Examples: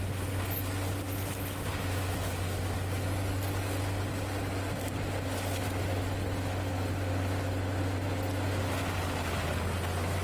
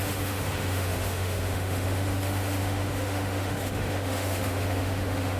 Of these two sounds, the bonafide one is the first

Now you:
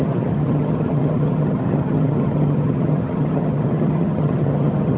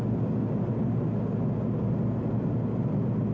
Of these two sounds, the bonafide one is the second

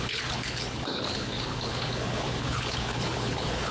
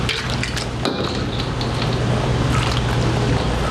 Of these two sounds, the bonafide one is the second